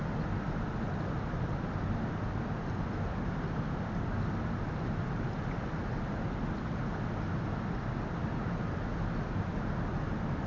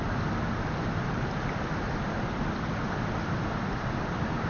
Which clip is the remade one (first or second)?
second